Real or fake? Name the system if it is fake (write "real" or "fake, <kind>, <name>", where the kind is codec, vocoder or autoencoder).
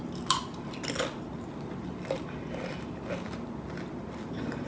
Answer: real